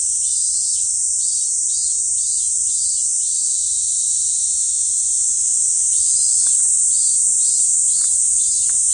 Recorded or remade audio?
recorded